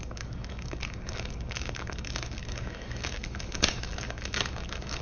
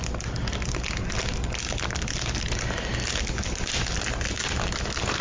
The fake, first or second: first